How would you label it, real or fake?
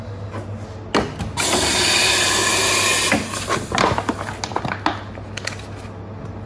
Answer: real